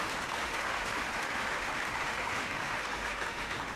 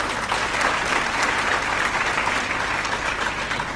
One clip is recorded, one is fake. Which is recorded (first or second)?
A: second